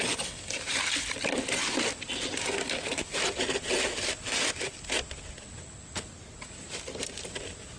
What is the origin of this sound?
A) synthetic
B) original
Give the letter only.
B